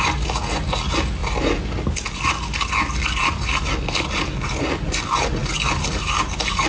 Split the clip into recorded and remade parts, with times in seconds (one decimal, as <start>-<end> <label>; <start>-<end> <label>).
0.0-6.7 recorded